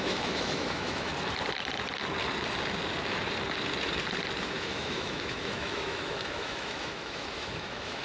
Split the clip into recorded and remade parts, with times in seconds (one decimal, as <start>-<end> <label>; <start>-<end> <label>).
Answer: 0.0-1.1 remade; 1.1-4.4 recorded; 4.4-8.0 remade